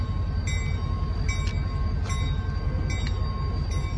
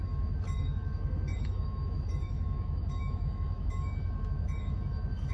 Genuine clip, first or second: first